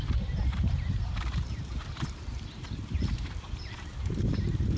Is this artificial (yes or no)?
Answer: yes